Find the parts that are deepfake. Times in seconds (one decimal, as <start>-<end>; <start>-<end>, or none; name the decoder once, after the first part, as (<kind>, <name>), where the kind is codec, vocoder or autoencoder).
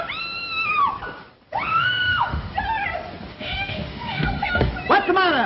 1.7-2.5 (autoencoder, DAC-VAE); 3.3-4.7